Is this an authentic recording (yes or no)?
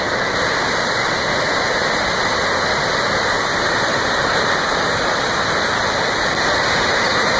yes